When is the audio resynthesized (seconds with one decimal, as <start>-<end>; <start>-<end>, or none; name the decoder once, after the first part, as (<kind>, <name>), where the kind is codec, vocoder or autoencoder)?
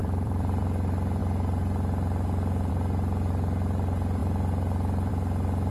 0.0-0.6 (vocoder, BigVGAN v2)